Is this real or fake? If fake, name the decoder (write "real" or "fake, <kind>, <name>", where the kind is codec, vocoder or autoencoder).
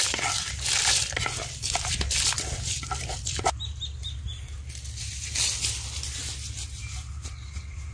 real